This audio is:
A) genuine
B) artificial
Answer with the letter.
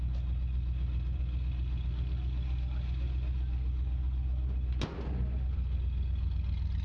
A